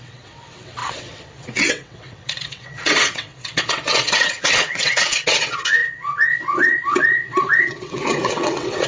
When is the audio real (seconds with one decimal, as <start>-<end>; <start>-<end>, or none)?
none